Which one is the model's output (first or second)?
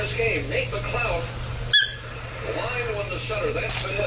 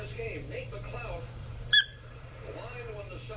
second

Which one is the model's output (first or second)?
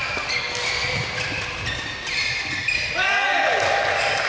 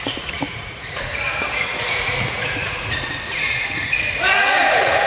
second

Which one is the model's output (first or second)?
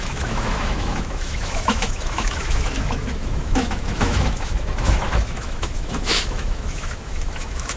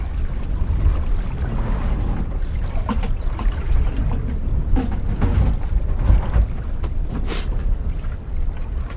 first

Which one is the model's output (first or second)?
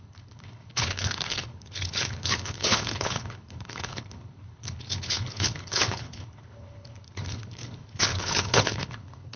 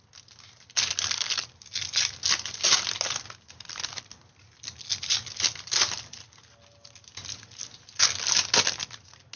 first